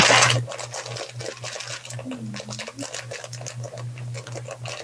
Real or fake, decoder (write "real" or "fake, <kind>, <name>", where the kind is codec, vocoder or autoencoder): real